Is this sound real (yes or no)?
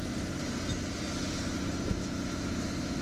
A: yes